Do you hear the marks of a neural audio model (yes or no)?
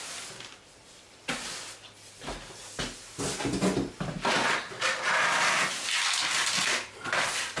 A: no